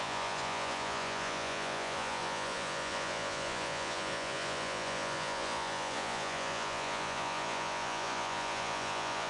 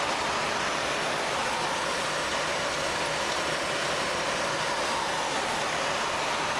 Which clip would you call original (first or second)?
second